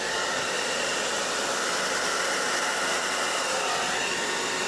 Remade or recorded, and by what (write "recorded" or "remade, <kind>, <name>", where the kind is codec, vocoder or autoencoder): recorded